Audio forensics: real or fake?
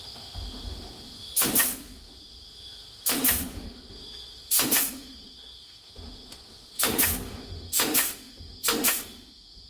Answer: fake